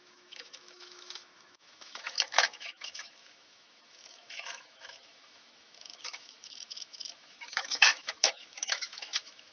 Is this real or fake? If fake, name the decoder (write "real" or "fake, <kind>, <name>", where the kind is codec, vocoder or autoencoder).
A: fake, autoencoder, DAC-VAE